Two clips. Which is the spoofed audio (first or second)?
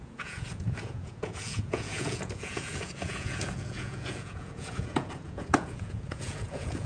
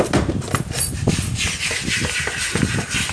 first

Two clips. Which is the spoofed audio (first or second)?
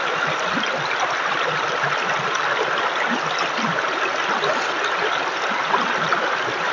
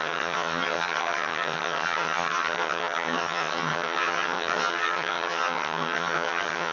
second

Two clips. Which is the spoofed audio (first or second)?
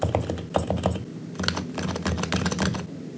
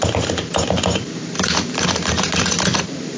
second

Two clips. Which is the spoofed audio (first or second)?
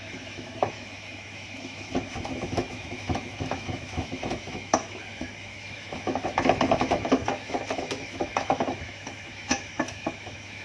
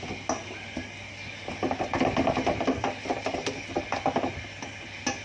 first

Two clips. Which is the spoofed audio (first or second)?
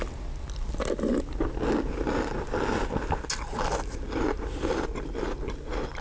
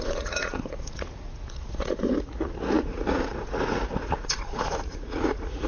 second